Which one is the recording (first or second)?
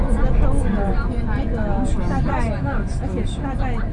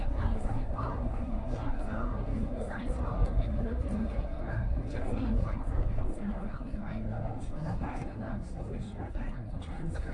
first